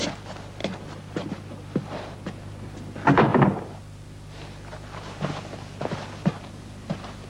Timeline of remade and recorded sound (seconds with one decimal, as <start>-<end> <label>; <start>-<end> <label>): 0.0-7.3 recorded